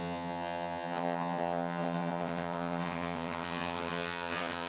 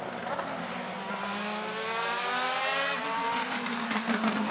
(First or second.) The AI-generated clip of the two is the first